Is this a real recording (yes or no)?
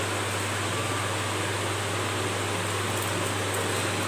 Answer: yes